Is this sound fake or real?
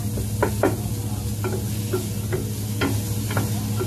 real